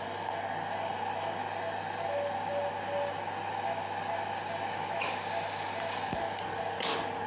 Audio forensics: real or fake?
real